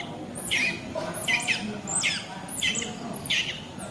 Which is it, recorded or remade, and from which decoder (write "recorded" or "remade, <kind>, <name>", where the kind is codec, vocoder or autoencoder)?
recorded